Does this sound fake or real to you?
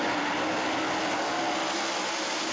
real